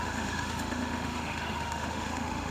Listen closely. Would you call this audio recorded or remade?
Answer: remade